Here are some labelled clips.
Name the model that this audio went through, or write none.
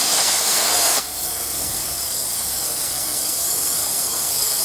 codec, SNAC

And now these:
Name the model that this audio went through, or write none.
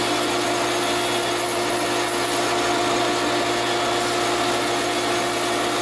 none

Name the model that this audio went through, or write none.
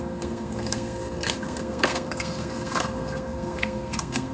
codec, SNAC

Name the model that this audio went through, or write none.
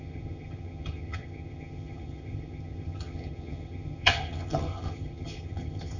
vocoder, HiFi-GAN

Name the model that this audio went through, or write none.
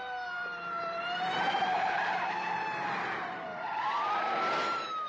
vocoder, BigVGAN v2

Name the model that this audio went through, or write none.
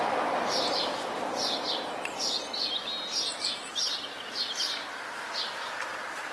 none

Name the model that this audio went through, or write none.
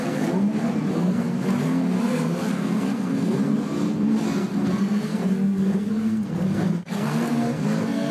codec, SNAC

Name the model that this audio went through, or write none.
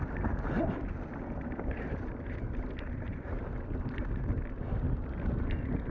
none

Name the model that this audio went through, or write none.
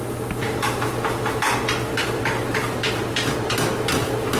none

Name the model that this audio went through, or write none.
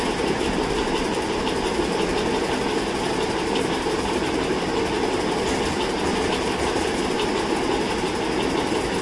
none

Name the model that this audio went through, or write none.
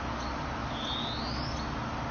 none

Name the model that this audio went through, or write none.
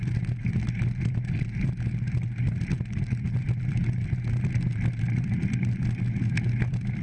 none